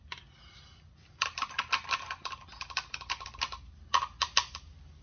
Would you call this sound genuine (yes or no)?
yes